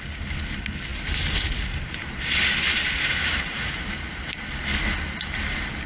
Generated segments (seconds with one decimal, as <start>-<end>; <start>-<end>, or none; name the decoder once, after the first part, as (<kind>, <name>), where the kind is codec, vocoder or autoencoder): 0.9-4.4 (vocoder, BigVGAN v2)